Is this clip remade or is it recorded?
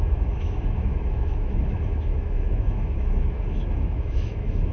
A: remade